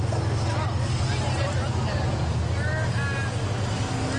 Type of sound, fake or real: real